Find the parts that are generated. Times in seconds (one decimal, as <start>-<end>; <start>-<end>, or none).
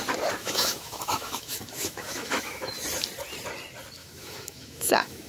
0.4-2.7; 4.0-5.3